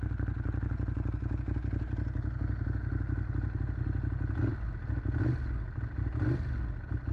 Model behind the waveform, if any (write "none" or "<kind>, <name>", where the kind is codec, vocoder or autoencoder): none